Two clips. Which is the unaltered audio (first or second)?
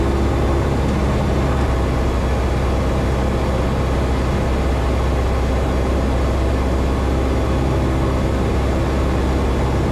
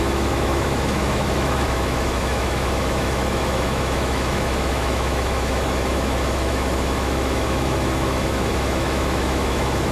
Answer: first